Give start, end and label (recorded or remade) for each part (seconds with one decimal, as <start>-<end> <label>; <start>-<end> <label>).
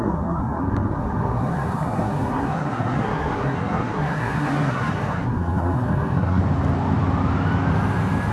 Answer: 0.0-6.4 remade; 6.4-8.3 recorded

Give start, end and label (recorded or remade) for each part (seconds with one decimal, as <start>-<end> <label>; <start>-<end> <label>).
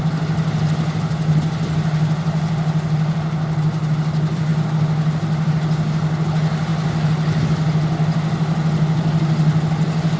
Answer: 0.0-10.2 recorded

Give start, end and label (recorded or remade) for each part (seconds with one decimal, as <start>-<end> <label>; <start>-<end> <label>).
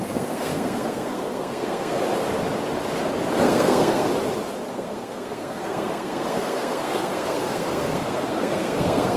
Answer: 0.0-2.0 remade; 2.0-3.4 recorded; 3.4-4.1 remade; 4.1-4.7 recorded; 4.7-9.2 remade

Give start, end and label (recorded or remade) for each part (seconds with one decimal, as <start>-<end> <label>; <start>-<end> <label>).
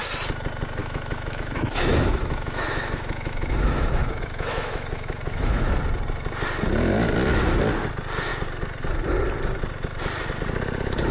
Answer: 0.0-0.8 recorded; 0.8-5.8 remade; 5.8-11.1 recorded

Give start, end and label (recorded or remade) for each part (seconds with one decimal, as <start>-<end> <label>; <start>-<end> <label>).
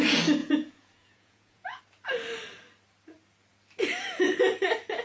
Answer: 0.0-0.4 recorded; 0.4-1.8 remade; 1.8-5.0 recorded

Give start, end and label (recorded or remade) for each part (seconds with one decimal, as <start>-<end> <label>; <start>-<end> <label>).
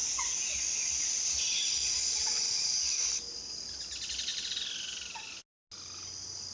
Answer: 0.0-0.6 remade; 0.6-2.0 recorded; 2.0-2.7 remade; 2.7-6.5 recorded